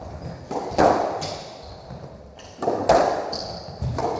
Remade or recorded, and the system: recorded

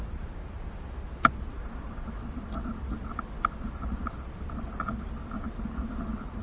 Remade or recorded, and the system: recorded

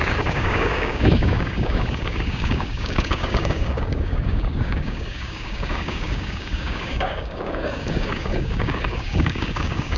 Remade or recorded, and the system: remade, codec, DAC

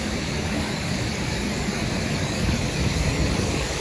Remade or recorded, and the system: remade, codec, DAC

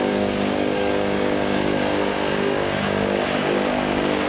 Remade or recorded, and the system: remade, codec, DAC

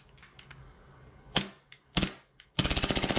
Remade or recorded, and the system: remade, codec, DAC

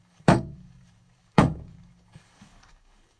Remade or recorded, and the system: remade, codec, DAC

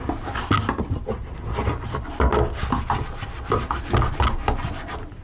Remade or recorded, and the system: recorded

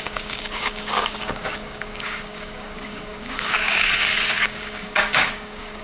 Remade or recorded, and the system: remade, codec, DAC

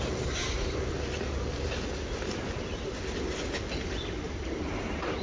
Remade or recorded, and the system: recorded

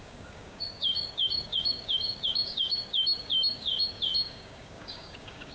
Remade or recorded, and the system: remade, codec, DAC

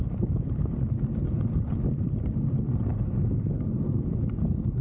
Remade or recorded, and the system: recorded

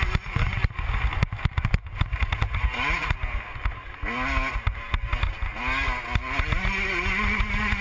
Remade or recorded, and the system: recorded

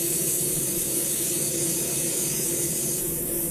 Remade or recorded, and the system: remade, codec, DAC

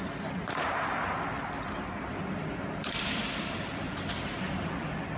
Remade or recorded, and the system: recorded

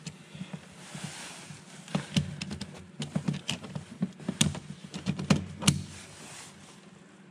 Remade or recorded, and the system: recorded